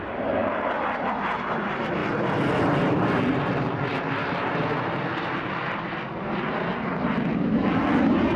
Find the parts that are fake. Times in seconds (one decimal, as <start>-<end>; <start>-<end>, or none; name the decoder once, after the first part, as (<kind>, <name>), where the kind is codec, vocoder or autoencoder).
none